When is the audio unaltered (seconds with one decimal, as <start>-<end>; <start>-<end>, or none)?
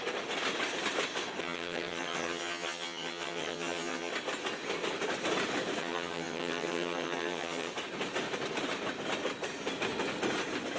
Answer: 0.0-1.4; 4.1-5.8; 7.7-10.8